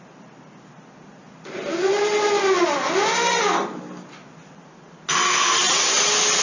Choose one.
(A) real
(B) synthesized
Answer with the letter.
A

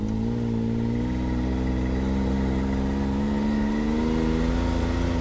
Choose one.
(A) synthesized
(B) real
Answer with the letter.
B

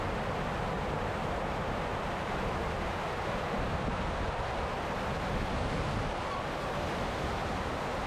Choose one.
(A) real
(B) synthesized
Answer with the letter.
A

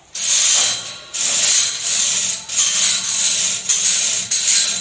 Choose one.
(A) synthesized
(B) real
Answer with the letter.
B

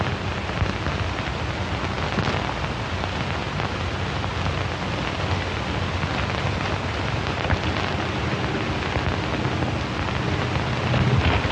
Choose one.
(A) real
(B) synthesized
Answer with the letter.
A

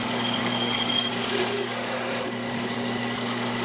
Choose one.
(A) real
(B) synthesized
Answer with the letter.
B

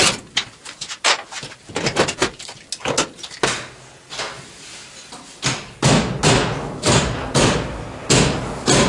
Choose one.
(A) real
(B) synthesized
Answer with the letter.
A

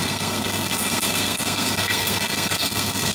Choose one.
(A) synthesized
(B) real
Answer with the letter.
A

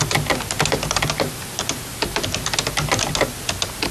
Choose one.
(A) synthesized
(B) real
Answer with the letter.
B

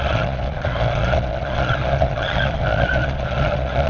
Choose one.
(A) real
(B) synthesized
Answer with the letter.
B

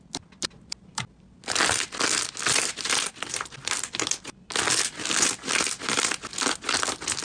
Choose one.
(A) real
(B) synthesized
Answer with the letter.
A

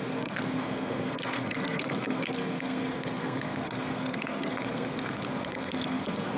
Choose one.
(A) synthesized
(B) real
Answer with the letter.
A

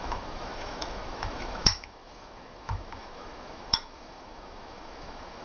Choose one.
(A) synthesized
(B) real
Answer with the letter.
A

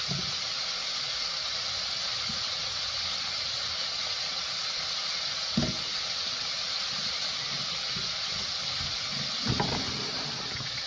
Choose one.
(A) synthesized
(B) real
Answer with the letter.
B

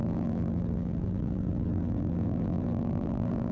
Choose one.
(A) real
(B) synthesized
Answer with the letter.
B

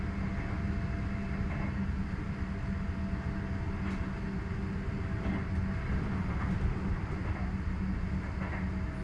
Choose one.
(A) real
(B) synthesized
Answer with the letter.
A